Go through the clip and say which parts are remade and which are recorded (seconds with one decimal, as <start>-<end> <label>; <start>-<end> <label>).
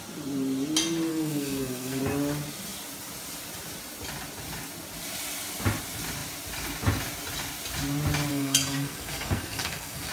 0.0-1.1 recorded; 1.1-2.0 remade; 2.0-8.3 recorded; 8.3-10.1 remade